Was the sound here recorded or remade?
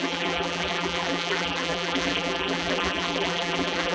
remade